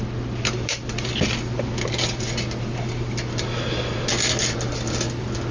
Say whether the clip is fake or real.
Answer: real